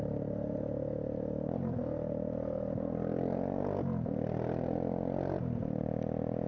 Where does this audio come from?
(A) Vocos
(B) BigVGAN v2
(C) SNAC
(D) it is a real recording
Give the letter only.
D